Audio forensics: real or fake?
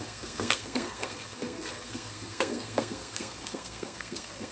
fake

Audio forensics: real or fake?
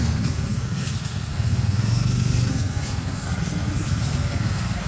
fake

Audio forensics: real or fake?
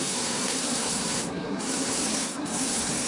fake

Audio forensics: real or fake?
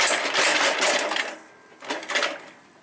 real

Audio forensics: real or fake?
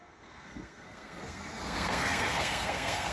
fake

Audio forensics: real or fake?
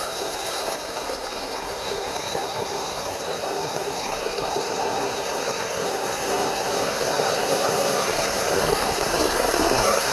fake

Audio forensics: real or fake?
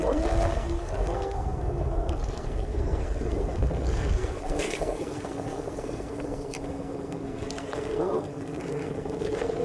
fake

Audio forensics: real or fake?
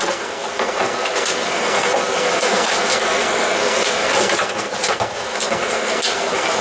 fake